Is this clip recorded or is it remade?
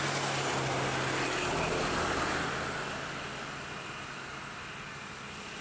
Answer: recorded